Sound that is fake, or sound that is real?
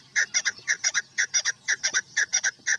real